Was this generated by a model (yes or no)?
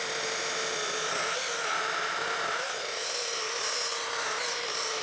no